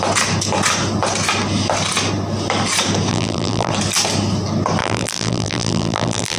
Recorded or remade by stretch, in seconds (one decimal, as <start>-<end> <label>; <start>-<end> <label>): 0.0-3.1 recorded; 3.1-3.7 remade; 3.7-4.8 recorded; 4.8-6.4 remade